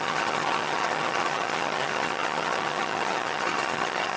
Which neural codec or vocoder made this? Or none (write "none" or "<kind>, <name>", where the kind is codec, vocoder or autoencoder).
vocoder, HiFi-GAN